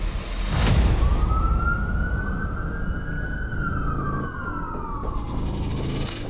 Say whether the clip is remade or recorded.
recorded